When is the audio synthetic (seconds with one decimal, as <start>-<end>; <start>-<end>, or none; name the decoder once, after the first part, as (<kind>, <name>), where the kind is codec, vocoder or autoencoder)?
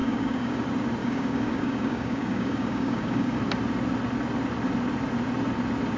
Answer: 0.0-0.6 (codec, DAC); 1.0-3.4